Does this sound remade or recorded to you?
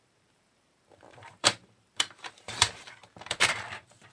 remade